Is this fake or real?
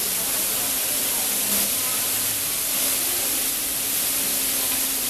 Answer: real